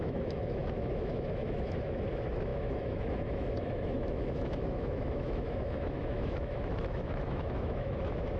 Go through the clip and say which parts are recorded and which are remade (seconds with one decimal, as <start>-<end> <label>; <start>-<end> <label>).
0.0-8.4 remade